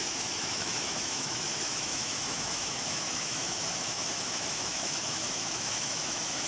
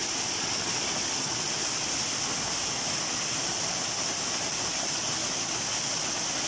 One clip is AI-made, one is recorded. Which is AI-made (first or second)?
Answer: first